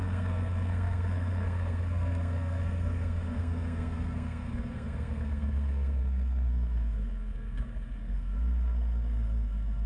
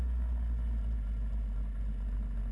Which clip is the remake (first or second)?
first